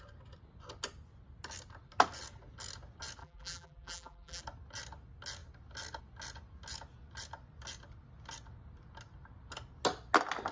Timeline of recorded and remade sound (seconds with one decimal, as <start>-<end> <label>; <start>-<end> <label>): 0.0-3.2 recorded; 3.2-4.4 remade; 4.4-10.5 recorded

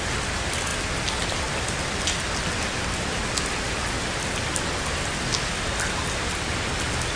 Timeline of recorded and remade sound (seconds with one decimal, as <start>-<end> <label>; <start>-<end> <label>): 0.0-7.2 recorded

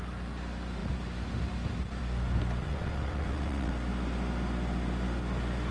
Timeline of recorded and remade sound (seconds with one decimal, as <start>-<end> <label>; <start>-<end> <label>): 0.0-2.6 recorded; 2.6-3.7 remade; 3.7-5.7 recorded